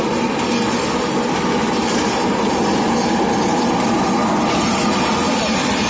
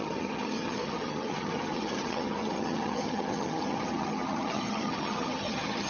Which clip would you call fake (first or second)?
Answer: second